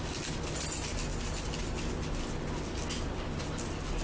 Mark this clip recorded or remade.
recorded